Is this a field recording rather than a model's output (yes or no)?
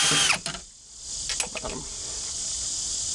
yes